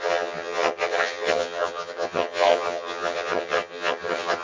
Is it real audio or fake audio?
fake